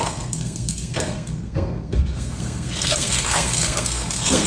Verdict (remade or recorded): remade